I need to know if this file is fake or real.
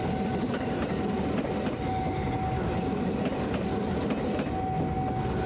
real